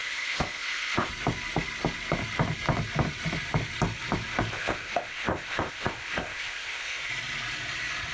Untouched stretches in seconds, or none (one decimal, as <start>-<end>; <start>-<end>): 1.1-4.5; 7.1-8.1